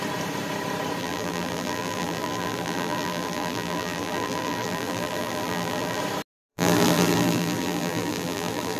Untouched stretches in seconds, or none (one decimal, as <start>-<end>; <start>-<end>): 0.0-1.0; 6.0-6.5